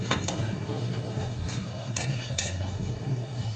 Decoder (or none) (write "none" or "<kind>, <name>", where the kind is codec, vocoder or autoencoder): codec, SNAC